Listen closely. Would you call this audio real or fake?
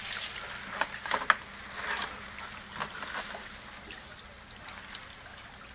real